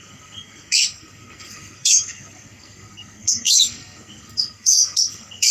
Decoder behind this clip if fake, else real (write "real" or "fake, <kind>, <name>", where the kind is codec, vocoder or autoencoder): fake, codec, SNAC